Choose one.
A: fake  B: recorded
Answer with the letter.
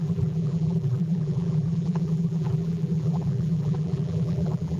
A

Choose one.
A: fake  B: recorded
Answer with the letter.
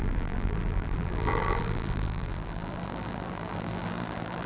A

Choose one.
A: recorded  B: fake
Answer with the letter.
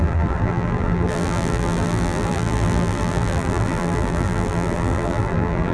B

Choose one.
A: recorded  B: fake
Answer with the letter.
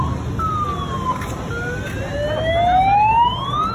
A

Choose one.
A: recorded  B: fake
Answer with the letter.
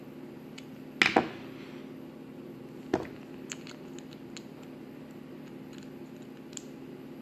A